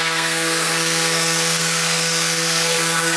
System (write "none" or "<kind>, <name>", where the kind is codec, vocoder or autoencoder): codec, SNAC